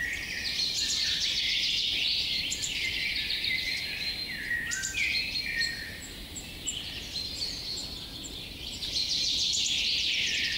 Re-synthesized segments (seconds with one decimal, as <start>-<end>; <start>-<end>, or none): none